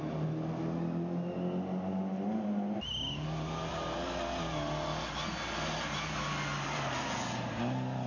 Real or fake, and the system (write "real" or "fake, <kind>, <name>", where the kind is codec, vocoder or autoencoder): real